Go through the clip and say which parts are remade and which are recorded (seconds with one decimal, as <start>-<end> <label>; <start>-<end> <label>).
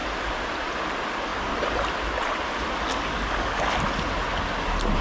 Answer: 0.0-2.9 recorded; 2.9-3.7 remade; 3.7-5.0 recorded